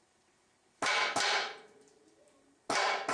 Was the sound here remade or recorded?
recorded